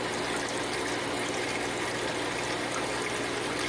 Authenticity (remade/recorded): recorded